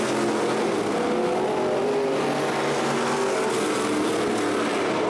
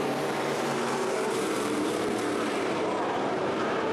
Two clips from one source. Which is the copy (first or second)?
second